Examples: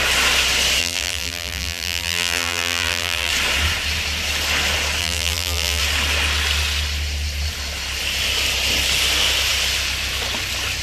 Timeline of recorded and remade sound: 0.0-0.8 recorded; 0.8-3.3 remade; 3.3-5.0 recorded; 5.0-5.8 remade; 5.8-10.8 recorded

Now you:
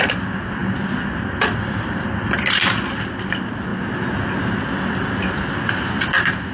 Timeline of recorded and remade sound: 0.0-0.6 recorded; 0.6-1.4 remade; 1.4-6.5 recorded

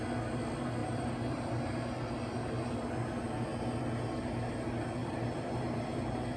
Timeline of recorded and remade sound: 0.0-0.8 recorded; 0.8-1.4 remade; 1.4-5.0 recorded; 5.0-6.4 remade

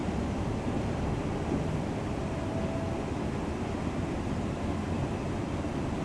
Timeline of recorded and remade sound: 0.0-1.8 remade; 1.8-6.0 recorded

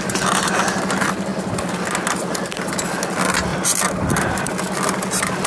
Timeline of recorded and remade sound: 0.0-3.5 recorded; 3.5-5.5 remade

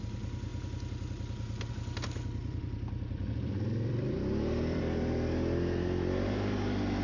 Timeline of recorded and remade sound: 0.0-2.4 recorded; 2.4-4.8 remade; 4.8-7.0 recorded